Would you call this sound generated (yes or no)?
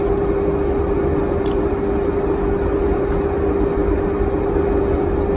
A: no